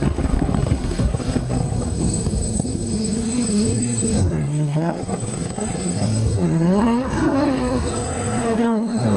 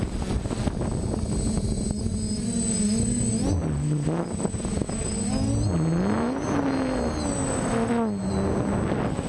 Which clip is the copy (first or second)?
first